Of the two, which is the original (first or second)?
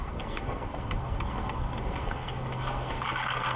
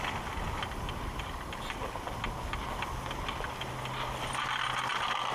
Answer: second